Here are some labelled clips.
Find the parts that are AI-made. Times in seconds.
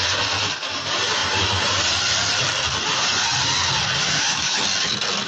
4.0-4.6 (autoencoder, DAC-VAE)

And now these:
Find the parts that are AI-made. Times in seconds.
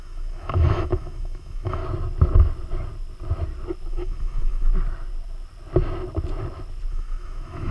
0.0-1.8 (autoencoder, DAC-VAE); 3.9-4.7; 6.9-7.7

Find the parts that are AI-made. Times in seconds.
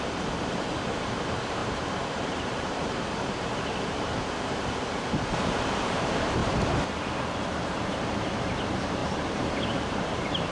0.0-6.4 (vocoder, BigVGAN v2); 7.6-10.5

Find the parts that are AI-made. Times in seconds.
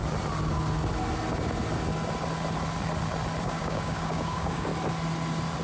3.4-4.7 (codec, DAC)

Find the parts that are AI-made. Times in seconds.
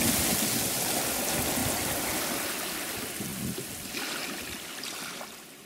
1.6-2.2 (vocoder, BigVGAN v2); 3.3-5.2